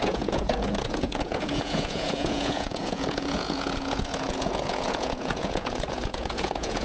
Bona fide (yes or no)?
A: no